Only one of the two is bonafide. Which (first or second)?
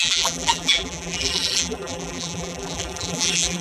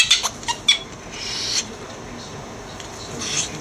second